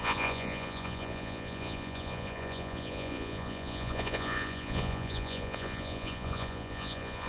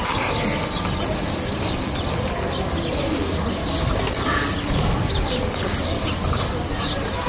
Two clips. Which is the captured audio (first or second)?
second